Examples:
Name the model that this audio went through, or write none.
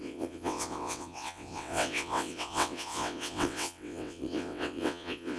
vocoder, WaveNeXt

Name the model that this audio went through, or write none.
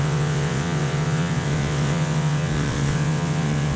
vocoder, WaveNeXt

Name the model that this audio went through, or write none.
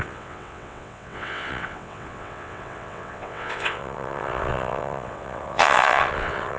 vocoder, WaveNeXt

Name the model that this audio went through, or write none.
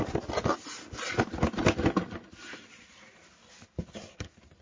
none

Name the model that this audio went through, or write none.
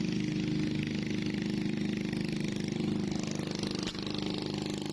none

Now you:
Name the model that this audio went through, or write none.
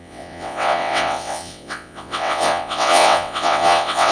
vocoder, WaveNeXt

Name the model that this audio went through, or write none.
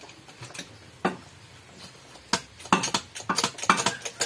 none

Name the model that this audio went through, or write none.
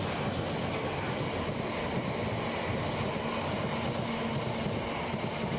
none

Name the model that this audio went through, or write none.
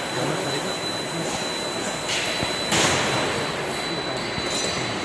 none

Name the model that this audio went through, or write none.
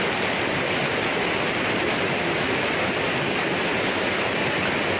none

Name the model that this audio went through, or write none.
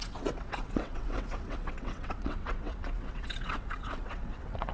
vocoder, WaveNeXt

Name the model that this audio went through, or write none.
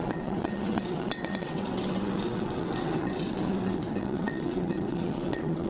vocoder, WaveNeXt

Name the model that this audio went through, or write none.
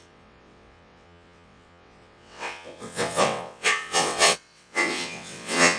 vocoder, WaveNeXt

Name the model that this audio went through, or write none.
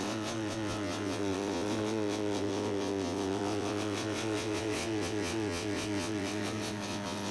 vocoder, WaveNeXt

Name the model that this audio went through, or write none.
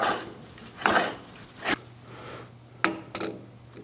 none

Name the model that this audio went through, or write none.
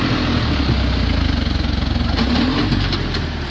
none